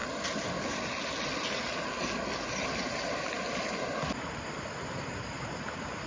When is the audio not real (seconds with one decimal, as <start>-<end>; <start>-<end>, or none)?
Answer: none